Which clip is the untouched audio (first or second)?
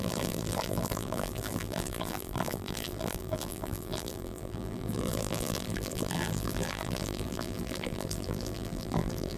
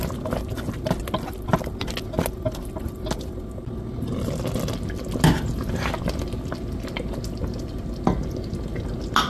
second